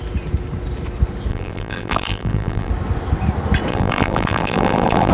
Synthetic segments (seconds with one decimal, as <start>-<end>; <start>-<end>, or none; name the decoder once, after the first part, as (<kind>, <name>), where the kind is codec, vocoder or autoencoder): 1.3-2.7 (vocoder, BigVGAN v2); 3.7-5.1